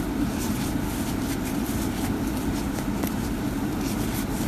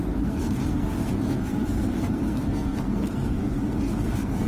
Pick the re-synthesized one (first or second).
second